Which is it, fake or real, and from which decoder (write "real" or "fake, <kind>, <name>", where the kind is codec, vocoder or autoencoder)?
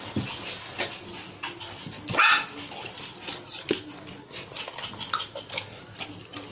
real